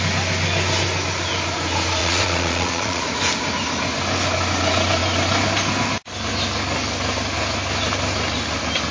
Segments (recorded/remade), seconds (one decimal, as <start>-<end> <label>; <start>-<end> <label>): 0.0-2.0 recorded; 2.0-3.0 remade; 3.0-8.9 recorded